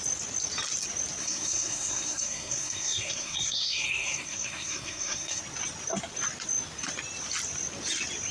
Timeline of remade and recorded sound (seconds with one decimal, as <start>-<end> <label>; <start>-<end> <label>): 0.0-1.2 recorded; 1.2-5.4 remade; 5.4-8.3 recorded